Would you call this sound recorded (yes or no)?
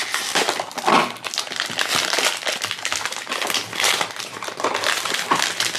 no